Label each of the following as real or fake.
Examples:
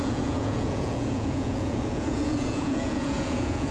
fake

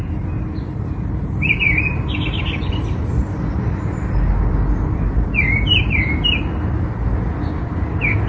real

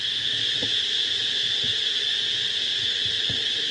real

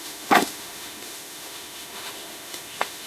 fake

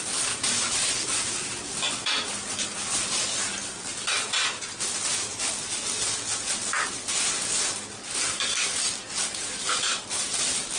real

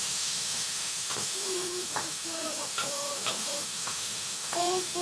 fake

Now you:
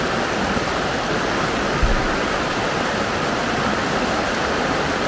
real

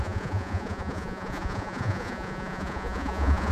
fake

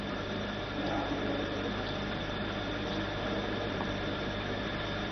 fake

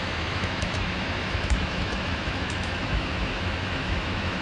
fake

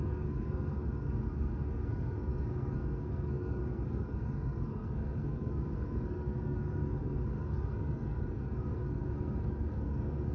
fake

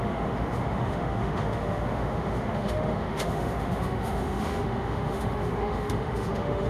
fake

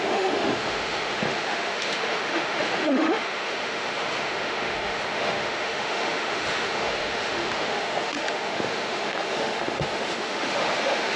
fake